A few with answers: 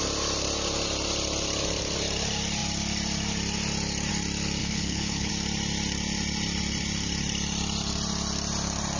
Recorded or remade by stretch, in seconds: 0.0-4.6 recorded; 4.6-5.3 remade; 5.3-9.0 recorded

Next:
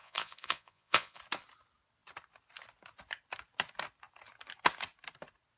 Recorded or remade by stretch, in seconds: 0.0-1.2 remade; 1.2-5.6 recorded